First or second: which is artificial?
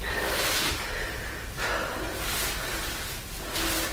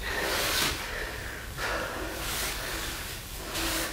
second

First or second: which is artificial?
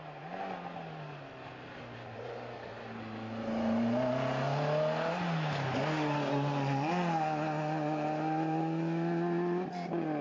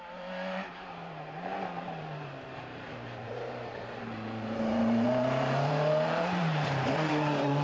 second